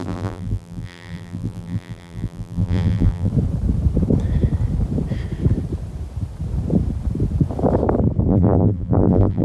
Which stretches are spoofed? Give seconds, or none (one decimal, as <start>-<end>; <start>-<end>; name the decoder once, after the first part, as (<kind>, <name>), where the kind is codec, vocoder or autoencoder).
0.0-3.3 (vocoder, BigVGAN v2); 8.3-9.4